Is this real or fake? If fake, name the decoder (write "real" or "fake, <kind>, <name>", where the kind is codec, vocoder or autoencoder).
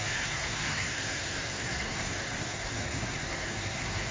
fake, codec, SNAC